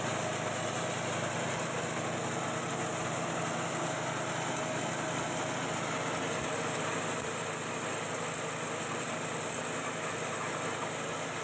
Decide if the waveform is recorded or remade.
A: recorded